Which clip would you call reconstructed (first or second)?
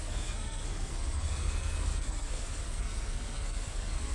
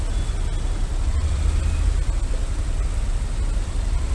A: first